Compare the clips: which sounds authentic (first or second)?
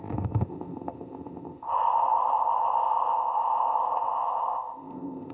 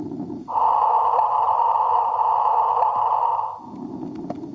second